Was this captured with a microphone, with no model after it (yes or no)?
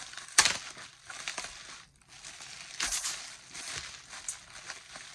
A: yes